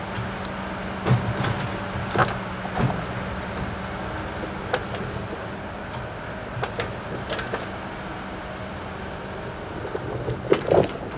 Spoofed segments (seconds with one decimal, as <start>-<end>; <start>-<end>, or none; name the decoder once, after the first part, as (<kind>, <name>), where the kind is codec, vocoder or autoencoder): none